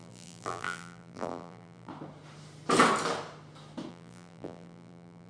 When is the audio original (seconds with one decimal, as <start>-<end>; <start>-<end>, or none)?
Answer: 1.9-3.9